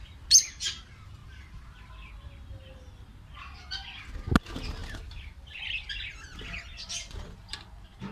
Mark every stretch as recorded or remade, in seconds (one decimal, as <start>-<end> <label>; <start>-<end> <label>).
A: 0.0-1.2 recorded; 1.2-1.9 remade; 1.9-4.8 recorded; 4.8-5.6 remade; 5.6-8.1 recorded